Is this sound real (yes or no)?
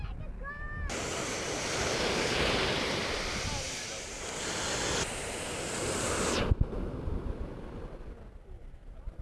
yes